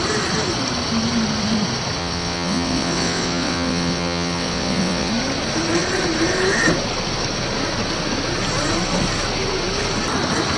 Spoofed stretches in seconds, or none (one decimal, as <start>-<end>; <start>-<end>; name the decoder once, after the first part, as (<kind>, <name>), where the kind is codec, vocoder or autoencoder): 2.0-5.1 (vocoder, WaveNeXt)